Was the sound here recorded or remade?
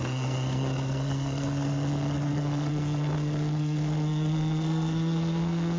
remade